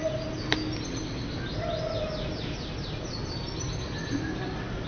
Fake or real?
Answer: real